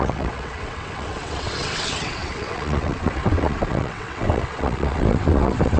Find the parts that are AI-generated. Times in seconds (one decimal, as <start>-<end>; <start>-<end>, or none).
0.0-5.8